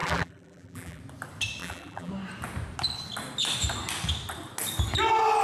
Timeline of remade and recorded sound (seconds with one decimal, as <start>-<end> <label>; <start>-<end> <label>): 0.0-1.0 remade; 1.0-1.6 recorded; 1.6-2.1 remade; 2.1-5.4 recorded